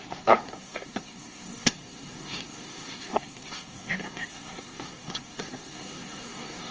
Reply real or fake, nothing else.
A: fake